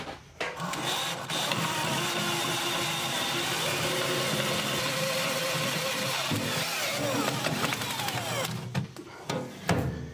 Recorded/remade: recorded